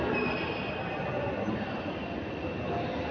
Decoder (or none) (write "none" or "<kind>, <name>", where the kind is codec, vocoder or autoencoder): none